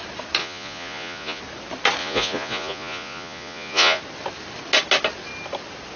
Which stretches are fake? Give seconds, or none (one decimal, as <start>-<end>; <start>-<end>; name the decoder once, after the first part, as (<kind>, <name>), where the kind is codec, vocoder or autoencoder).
0.4-1.4 (vocoder, Vocos); 2.0-4.0